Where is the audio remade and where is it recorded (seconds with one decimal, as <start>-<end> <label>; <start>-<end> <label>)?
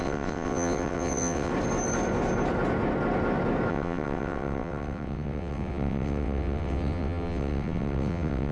0.0-1.5 remade; 1.5-3.7 recorded; 3.7-8.5 remade